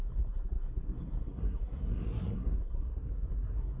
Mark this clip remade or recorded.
remade